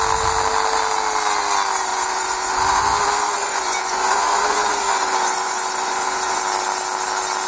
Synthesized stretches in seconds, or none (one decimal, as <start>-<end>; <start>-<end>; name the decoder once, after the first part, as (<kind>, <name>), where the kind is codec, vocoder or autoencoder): 1.9-6.4 (vocoder, Vocos)